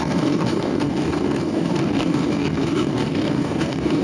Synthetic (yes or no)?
yes